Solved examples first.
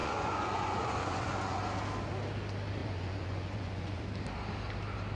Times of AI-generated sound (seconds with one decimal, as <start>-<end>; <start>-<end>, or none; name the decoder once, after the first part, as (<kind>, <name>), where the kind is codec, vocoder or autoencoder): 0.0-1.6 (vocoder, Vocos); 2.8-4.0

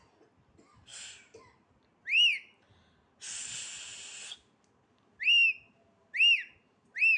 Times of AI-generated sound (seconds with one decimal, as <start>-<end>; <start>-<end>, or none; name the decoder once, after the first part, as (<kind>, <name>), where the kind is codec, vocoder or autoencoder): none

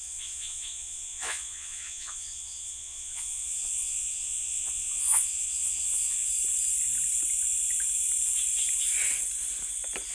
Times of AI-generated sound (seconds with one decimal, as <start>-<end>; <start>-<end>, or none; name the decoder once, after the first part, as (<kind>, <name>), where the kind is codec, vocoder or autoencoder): 0.0-6.3 (vocoder, Vocos)

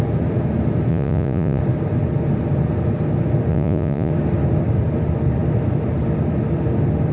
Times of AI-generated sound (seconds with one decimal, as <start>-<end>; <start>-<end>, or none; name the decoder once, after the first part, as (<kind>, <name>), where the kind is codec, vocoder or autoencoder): 0.9-1.6 (vocoder, Vocos); 3.5-4.1

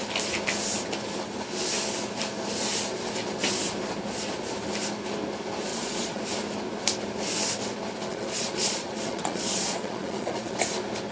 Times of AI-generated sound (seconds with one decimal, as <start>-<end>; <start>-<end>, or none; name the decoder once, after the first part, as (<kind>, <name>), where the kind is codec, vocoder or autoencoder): 5.7-6.2 (vocoder, Vocos); 8.1-10.6

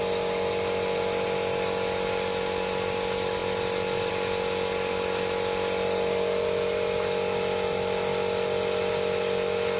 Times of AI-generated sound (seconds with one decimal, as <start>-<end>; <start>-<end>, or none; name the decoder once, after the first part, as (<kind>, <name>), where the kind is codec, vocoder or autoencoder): none